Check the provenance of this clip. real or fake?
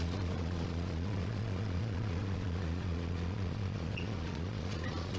fake